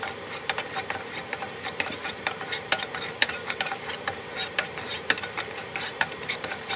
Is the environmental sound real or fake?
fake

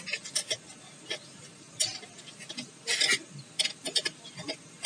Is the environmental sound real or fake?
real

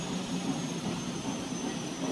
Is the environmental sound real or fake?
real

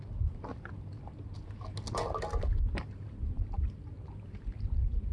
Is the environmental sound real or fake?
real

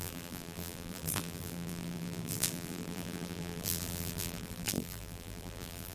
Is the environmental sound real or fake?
fake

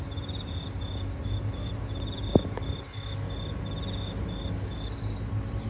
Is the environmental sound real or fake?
real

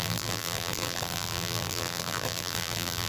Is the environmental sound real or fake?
fake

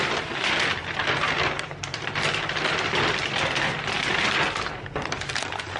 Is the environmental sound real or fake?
fake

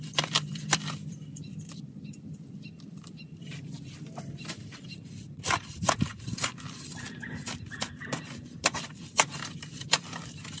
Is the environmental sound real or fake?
fake